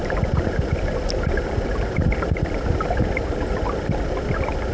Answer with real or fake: real